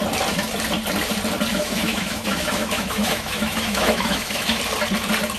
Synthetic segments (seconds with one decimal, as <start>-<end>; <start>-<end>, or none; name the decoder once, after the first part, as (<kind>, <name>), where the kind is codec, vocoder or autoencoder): 1.5-4.6 (autoencoder, DAC-VAE)